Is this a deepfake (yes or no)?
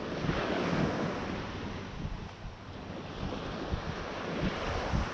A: no